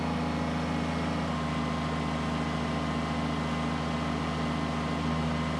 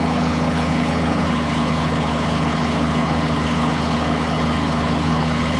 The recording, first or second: first